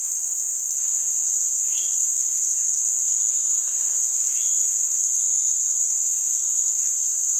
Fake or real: fake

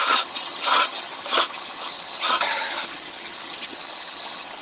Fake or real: fake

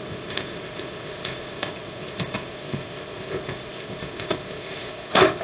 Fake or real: fake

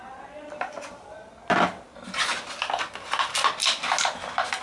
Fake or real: real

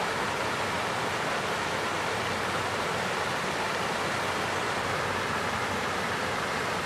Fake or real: real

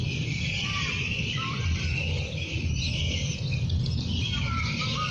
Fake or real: real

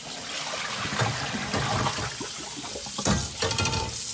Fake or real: real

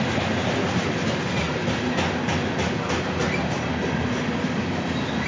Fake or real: real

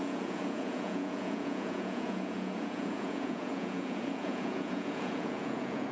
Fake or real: fake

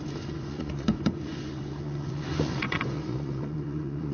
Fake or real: fake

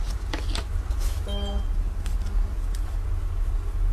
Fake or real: real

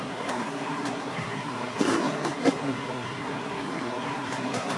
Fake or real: fake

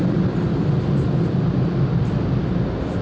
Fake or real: real